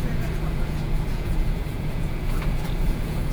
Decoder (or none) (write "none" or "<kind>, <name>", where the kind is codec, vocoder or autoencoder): vocoder, Vocos